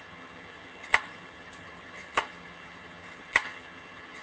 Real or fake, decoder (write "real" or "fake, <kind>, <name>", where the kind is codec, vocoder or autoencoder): fake, vocoder, HiFi-GAN